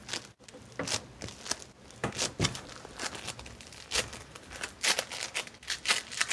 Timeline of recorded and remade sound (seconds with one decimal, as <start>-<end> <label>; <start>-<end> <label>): 0.0-6.3 recorded